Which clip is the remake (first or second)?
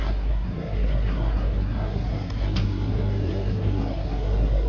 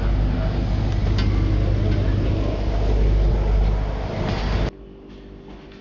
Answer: first